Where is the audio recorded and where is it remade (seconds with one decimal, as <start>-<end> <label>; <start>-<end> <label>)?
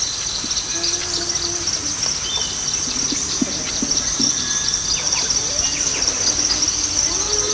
0.0-7.5 recorded